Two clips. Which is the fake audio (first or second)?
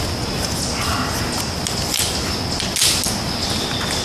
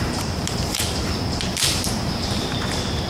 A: second